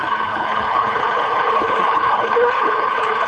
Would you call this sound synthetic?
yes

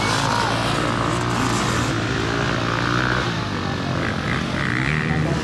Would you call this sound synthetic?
no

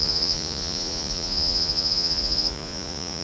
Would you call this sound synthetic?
yes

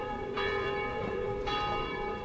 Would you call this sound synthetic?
yes